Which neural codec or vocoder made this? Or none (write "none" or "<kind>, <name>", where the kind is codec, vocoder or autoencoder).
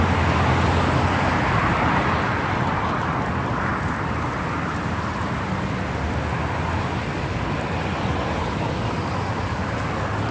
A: none